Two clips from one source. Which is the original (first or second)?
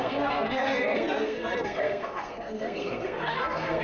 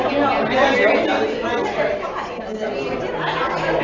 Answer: second